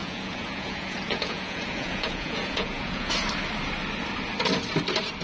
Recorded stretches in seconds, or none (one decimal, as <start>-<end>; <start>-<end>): 3.1-5.2